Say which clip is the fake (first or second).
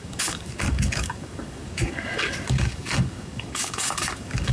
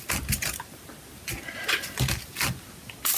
first